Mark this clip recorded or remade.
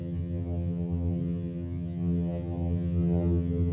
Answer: remade